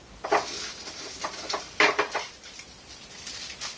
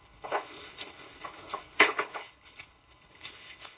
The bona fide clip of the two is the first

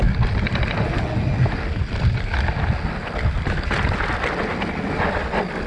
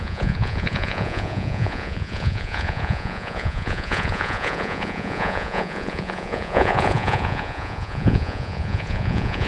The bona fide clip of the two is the first